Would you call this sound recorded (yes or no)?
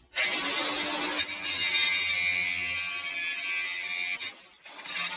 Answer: yes